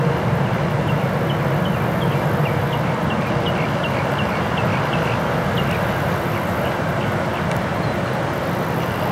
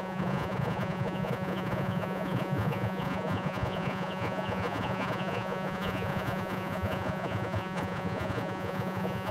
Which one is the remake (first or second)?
second